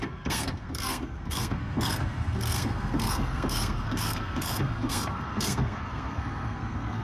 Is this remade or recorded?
remade